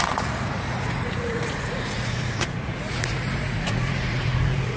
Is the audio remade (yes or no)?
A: yes